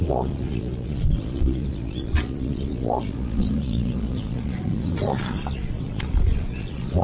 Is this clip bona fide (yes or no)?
no